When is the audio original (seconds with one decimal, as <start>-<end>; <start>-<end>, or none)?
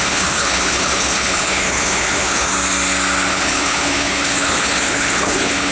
2.5-3.3